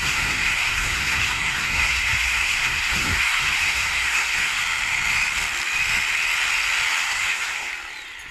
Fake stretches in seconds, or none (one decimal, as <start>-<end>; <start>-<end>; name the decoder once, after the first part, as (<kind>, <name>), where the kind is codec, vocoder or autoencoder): 0.0-4.6 (codec, SNAC); 7.0-7.7